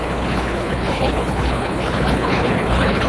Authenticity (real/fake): fake